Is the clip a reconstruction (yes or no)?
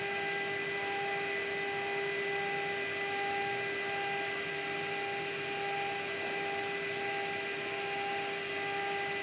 no